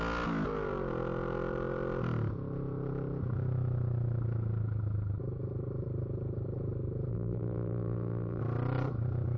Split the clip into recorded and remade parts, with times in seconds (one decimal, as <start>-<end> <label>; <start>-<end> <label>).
0.0-7.1 recorded; 7.1-8.4 remade; 8.4-9.4 recorded